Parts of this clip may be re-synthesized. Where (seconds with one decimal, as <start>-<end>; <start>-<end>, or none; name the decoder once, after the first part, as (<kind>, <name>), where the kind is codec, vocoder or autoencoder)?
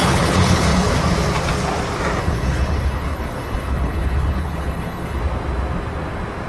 0.0-0.9 (codec, HILCodec); 2.2-5.2